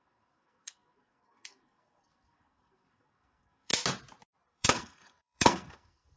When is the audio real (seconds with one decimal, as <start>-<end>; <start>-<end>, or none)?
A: 3.7-4.5